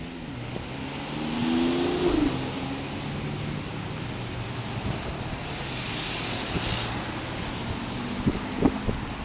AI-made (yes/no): no